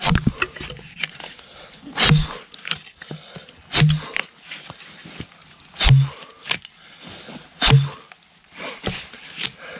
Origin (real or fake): real